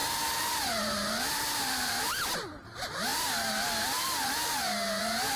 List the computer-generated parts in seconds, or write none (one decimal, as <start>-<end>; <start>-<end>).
0.0-2.1; 3.1-5.0